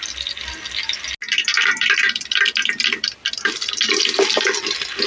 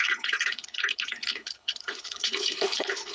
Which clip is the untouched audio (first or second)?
first